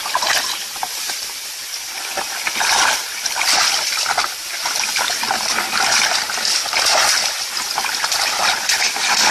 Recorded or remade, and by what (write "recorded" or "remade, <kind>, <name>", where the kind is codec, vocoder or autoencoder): recorded